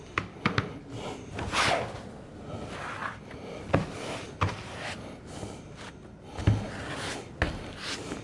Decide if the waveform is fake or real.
real